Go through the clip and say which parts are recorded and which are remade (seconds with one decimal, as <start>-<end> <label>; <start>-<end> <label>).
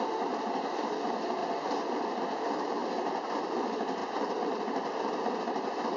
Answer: 0.0-6.0 recorded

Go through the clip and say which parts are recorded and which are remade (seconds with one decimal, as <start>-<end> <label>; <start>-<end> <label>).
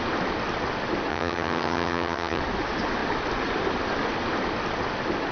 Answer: 0.0-1.1 recorded; 1.1-2.4 remade; 2.4-5.3 recorded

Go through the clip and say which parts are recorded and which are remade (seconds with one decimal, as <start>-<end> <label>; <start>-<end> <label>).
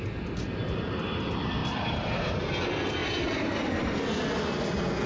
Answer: 0.0-1.6 recorded; 1.6-2.4 remade; 2.4-3.0 recorded; 3.0-4.1 remade; 4.1-5.1 recorded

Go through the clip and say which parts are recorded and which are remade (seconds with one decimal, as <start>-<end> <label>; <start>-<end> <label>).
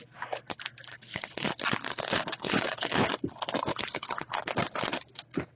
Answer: 0.0-0.9 recorded; 0.9-1.5 remade; 1.5-1.9 recorded; 1.9-3.1 remade; 3.1-3.7 recorded; 3.7-4.4 remade; 4.4-5.6 recorded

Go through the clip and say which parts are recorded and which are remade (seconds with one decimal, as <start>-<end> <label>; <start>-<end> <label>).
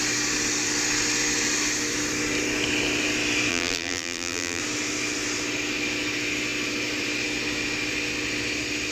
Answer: 0.0-3.5 recorded; 3.5-4.6 remade; 4.6-8.9 recorded